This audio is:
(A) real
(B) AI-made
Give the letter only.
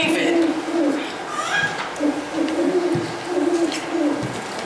A